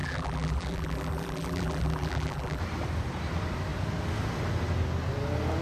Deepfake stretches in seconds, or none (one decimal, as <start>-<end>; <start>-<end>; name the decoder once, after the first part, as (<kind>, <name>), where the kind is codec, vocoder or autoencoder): 0.0-2.6 (vocoder, BigVGAN v2)